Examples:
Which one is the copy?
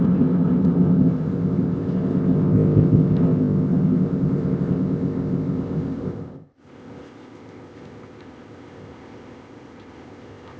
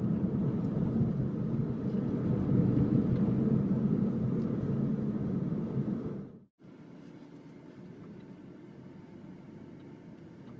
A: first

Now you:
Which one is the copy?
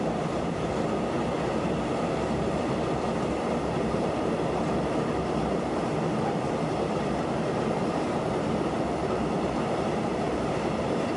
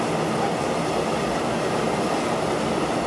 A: first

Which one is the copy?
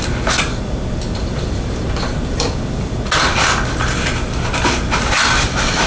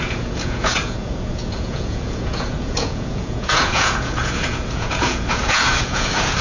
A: second